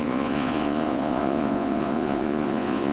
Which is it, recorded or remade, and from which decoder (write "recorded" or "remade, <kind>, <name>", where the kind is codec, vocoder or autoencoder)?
remade, vocoder, Vocos